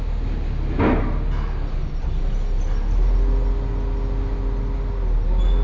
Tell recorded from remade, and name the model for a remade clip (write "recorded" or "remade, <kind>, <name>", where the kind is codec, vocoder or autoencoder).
recorded